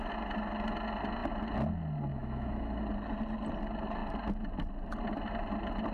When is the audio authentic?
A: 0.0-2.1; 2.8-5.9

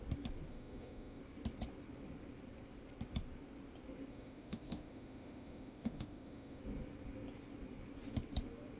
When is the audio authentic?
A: 0.0-0.5; 1.2-4.1; 6.6-8.8

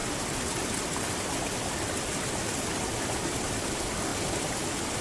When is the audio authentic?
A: 0.0-5.0

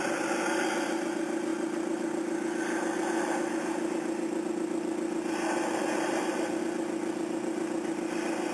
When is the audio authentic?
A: 0.0-8.5

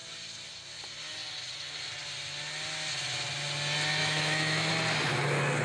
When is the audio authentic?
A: 0.0-4.0; 4.7-5.6

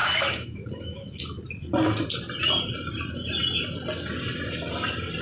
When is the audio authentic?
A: 1.2-5.2